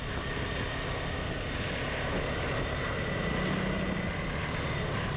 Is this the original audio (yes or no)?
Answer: yes